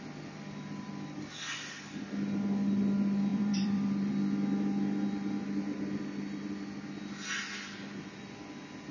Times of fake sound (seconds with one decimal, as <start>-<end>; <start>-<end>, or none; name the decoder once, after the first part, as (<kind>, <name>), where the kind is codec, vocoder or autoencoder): 3.3-4.1 (vocoder, BigVGAN v2)